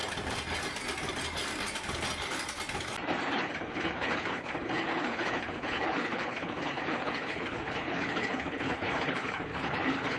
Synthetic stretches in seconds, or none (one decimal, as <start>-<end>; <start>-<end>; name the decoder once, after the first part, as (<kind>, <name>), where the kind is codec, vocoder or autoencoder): 3.3-10.2 (codec, HILCodec)

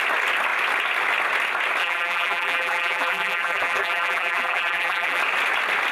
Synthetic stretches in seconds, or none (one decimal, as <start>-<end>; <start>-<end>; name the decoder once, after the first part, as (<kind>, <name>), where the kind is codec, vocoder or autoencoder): 1.8-5.2 (vocoder, BigVGAN v2)

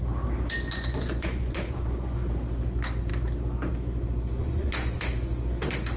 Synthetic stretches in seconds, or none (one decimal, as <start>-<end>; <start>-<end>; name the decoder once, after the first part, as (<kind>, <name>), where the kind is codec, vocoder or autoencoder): 0.9-2.2 (vocoder, Vocos); 4.4-5.0

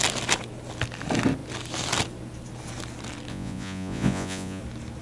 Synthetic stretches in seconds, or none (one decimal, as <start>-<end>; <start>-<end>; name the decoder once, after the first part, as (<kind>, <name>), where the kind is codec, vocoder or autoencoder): 3.3-4.6 (vocoder, Vocos)

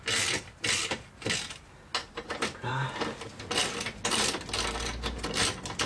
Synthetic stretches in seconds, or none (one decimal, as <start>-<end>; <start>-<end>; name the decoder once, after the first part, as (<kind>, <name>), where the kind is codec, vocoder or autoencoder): none